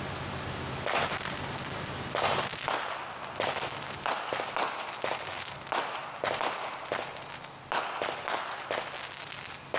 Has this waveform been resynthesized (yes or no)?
no